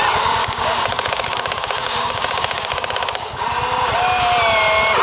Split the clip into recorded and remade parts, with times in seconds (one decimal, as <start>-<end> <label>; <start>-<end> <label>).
0.0-0.4 recorded; 0.4-3.4 remade; 3.4-5.0 recorded